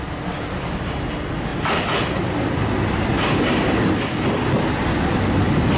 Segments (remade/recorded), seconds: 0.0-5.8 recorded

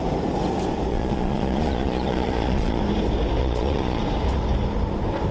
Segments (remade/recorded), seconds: 0.0-0.9 recorded; 0.9-2.8 remade; 2.8-3.4 recorded; 3.4-4.0 remade; 4.0-5.3 recorded

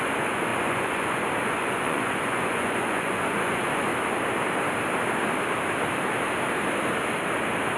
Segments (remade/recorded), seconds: 0.0-3.9 remade; 3.9-7.8 recorded

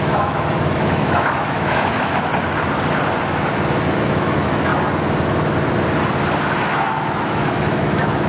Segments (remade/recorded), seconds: 0.0-2.3 remade; 2.3-3.9 recorded; 3.9-4.7 remade; 4.7-6.6 recorded; 6.6-8.3 remade

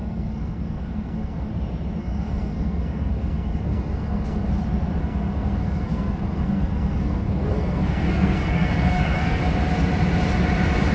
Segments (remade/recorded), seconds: 0.0-1.5 remade; 1.5-2.0 recorded; 2.0-4.5 remade; 4.5-5.0 recorded; 5.0-9.4 remade; 9.4-10.9 recorded